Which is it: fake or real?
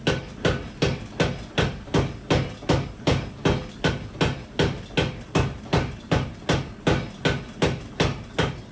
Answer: real